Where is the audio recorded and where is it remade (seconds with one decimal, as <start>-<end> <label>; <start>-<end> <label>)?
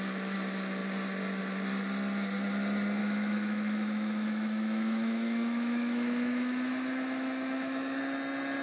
0.0-3.0 recorded; 3.0-8.0 remade; 8.0-8.6 recorded